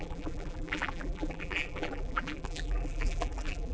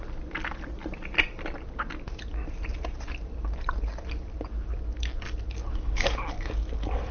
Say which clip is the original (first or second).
second